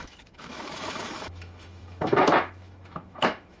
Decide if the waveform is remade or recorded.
remade